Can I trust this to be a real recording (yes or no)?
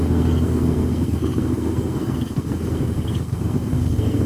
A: no